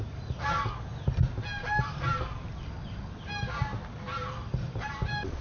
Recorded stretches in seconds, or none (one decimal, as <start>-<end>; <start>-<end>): 0.0-5.4